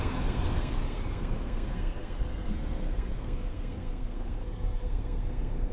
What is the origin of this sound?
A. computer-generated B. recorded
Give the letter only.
A